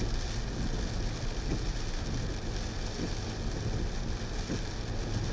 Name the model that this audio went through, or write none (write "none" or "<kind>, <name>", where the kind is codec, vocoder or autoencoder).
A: none